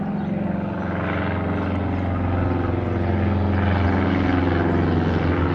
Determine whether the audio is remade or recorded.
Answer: recorded